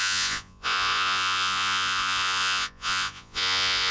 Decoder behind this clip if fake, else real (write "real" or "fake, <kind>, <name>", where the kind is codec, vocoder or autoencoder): fake, vocoder, Vocos